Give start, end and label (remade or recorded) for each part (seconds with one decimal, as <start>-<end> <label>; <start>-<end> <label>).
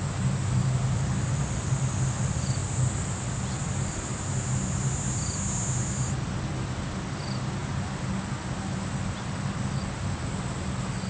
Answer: 0.0-11.1 recorded